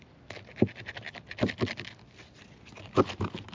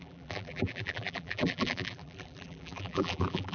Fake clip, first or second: second